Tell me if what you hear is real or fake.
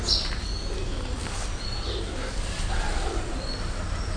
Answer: real